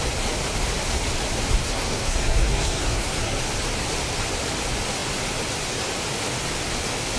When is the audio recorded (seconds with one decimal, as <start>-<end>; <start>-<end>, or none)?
0.0-1.6; 3.4-7.2